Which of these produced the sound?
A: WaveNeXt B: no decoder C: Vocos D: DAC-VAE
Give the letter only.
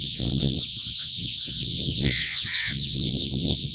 A